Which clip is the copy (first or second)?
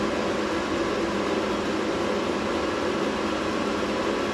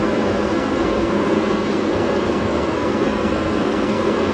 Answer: second